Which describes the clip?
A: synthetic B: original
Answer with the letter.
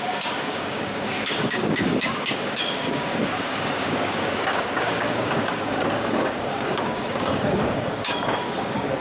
A